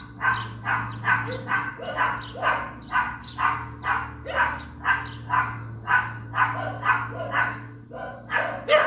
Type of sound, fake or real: real